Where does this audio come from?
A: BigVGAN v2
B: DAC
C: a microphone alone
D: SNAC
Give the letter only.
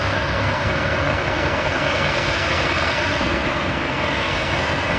D